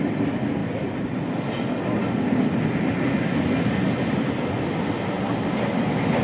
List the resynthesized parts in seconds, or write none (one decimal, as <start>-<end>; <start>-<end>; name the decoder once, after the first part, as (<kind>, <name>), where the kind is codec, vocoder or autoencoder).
0.6-1.2 (vocoder, BigVGAN v2)